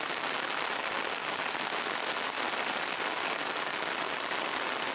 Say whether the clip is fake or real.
real